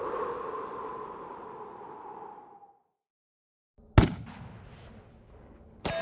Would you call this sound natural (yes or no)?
yes